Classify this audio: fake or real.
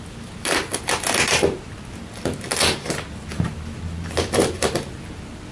real